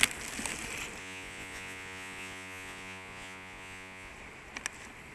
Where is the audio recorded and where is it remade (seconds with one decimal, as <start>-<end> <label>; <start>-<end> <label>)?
0.0-1.0 recorded; 1.0-4.1 remade; 4.1-5.1 recorded